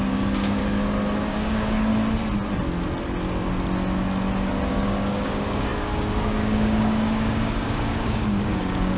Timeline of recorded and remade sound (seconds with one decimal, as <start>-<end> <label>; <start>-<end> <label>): 0.0-0.6 remade; 0.6-1.3 recorded; 1.3-1.9 remade; 1.9-4.7 recorded; 4.7-9.0 remade